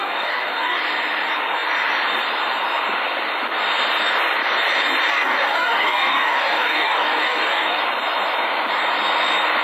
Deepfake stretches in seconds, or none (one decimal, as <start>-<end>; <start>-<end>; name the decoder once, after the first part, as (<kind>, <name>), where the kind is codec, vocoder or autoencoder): 0.0-0.8 (codec, DAC); 5.1-7.8